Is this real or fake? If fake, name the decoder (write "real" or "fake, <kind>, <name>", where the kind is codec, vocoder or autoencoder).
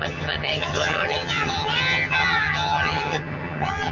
fake, vocoder, HiFi-GAN